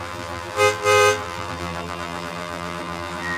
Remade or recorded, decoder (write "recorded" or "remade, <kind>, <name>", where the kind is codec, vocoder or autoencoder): remade, vocoder, BigVGAN v2